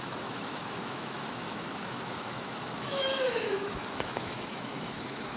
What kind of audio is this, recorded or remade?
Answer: remade